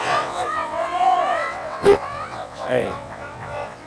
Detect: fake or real fake